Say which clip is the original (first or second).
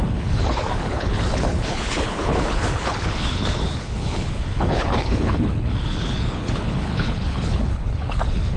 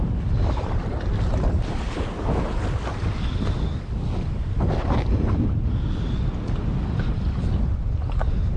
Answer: second